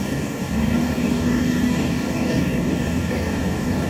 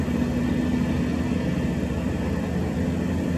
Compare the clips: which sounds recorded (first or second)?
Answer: second